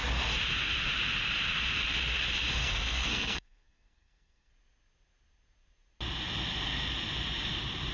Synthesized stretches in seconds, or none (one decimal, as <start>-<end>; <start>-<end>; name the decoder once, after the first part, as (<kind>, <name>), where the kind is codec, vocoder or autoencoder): 2.6-4.5 (codec, SNAC)